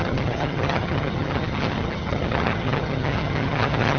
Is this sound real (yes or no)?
no